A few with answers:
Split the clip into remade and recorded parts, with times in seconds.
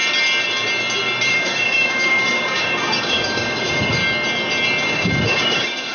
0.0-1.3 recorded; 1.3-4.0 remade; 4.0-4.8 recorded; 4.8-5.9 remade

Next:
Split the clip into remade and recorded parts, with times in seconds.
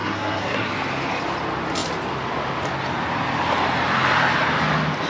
0.0-0.7 remade; 0.7-5.1 recorded